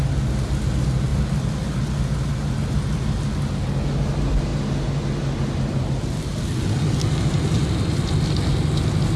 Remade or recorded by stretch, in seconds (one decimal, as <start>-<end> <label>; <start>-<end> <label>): 0.0-9.2 recorded